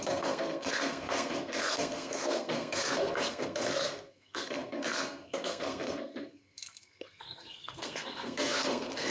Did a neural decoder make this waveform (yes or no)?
yes